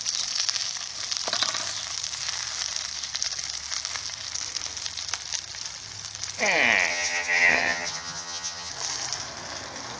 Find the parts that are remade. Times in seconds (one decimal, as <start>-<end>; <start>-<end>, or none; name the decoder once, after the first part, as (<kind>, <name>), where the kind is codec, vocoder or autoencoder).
6.9-8.7 (vocoder, HiFi-GAN)